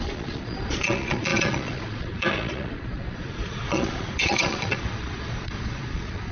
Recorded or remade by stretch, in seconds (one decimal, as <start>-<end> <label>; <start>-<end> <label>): 0.0-6.3 remade